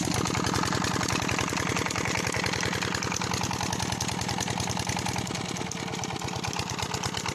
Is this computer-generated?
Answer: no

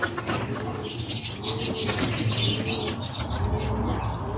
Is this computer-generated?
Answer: no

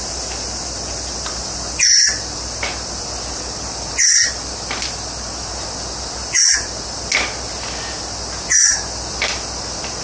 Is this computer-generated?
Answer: no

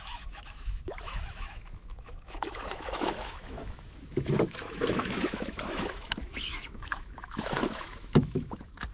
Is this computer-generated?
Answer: yes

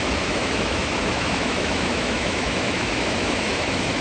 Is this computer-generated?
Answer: yes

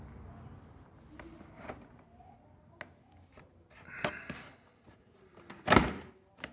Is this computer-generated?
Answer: no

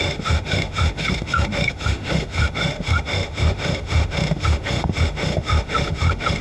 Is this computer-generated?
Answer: yes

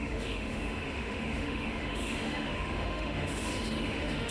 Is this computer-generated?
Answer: yes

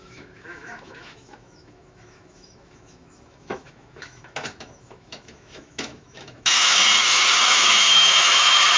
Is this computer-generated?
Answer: yes